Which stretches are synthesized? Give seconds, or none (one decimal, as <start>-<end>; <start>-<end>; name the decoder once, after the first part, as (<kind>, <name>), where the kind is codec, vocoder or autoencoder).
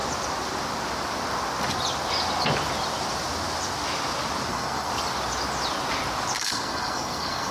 4.5-4.9 (codec, SNAC); 6.4-7.5